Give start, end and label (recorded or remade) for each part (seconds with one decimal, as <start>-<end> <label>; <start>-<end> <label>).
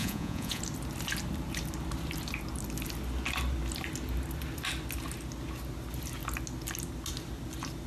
0.0-0.6 remade; 0.6-7.9 recorded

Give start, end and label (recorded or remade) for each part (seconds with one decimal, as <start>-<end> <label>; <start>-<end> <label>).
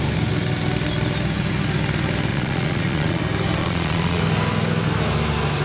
0.0-2.3 recorded; 2.3-3.2 remade; 3.2-3.6 recorded; 3.6-4.2 remade; 4.2-5.6 recorded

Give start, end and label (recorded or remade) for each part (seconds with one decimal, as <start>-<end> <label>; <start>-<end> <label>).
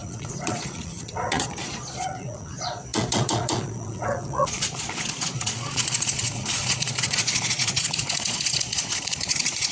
0.0-9.7 remade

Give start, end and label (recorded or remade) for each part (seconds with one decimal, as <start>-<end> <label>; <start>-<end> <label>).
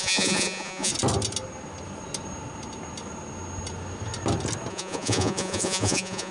0.0-0.9 remade; 0.9-4.7 recorded; 4.7-6.3 remade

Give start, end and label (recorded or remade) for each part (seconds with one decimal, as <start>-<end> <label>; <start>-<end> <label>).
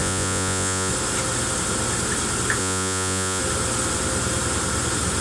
0.0-0.9 remade; 0.9-2.6 recorded; 2.6-3.4 remade; 3.4-5.2 recorded